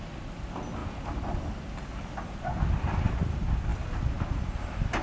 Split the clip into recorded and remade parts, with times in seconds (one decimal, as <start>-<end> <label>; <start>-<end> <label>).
0.0-5.0 recorded